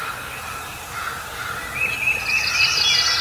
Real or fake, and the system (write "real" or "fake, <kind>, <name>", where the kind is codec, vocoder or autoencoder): real